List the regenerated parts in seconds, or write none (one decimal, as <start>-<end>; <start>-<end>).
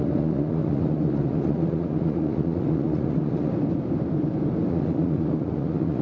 0.0-3.5; 4.7-6.0